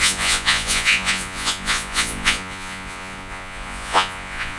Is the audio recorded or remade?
remade